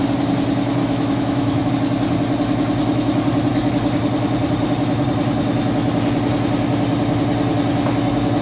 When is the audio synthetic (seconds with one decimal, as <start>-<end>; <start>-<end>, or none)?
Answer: 0.8-1.7